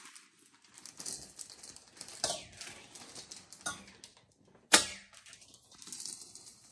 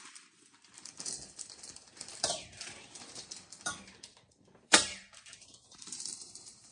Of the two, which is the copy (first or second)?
second